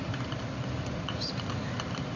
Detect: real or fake real